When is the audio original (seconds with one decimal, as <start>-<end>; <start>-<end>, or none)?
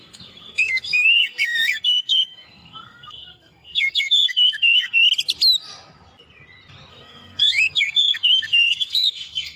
5.0-6.9